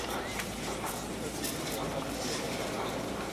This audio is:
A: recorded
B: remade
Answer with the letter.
B